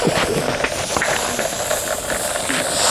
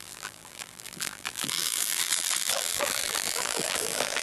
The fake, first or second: second